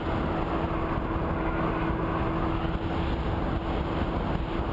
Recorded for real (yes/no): yes